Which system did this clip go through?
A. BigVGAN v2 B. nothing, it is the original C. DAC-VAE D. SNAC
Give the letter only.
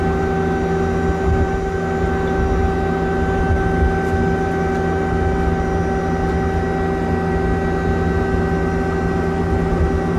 B